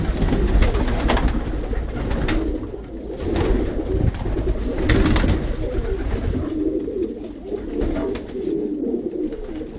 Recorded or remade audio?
recorded